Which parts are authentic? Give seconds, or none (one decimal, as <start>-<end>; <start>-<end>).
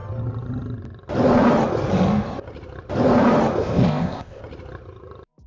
0.0-3.6; 4.4-5.5